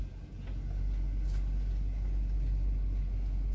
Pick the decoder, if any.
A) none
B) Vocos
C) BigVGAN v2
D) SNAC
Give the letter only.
A